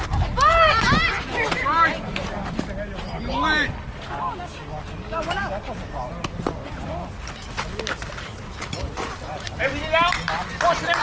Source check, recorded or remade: recorded